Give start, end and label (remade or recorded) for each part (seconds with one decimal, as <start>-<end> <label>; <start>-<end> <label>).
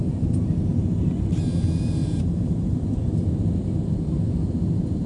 0.0-0.7 recorded; 0.7-1.2 remade; 1.2-2.0 recorded; 2.0-2.9 remade; 2.9-5.1 recorded